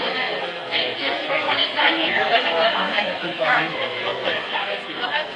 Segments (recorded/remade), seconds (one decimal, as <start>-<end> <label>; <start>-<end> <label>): 0.0-5.4 remade